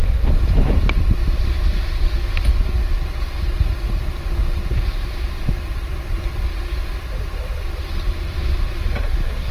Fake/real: real